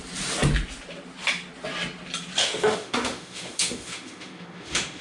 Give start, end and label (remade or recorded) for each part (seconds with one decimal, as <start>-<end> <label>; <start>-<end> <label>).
0.0-2.4 recorded; 2.4-5.0 remade